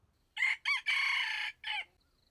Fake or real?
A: real